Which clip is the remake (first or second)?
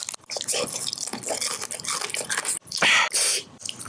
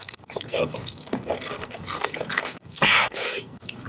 second